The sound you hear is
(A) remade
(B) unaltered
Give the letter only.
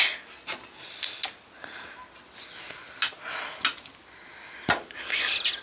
B